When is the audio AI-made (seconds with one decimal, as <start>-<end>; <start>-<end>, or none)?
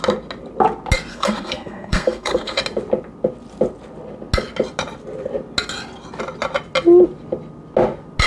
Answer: 1.1-2.6